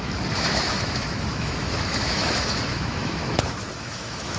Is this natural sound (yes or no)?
no